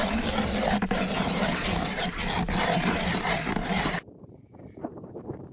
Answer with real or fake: fake